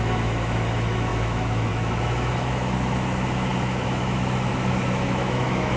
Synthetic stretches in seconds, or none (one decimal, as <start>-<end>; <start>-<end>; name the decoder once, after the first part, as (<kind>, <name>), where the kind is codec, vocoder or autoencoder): 0.0-5.8 (autoencoder, DAC-VAE)